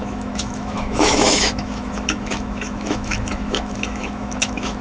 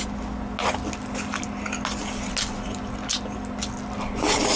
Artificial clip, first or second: first